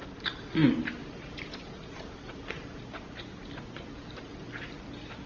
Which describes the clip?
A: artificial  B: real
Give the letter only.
B